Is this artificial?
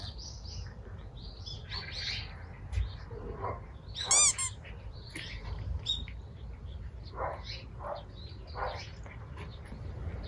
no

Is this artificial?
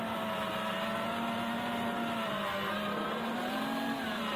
no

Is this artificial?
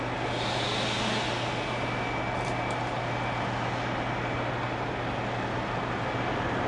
no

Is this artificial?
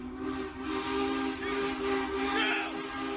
no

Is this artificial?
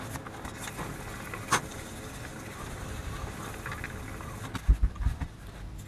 no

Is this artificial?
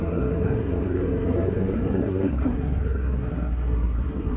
yes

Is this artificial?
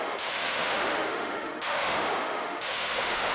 yes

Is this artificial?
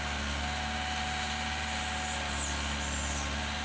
no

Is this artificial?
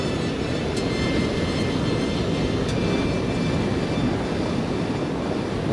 no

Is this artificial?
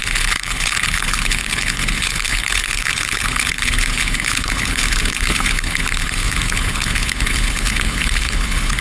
yes